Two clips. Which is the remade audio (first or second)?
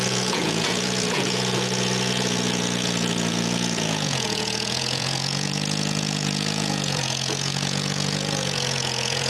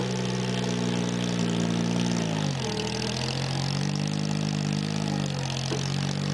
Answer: first